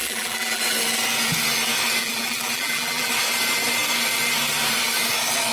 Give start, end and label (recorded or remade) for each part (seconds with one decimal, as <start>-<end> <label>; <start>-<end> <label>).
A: 0.0-0.6 remade; 0.6-2.0 recorded; 2.0-3.1 remade; 3.1-5.5 recorded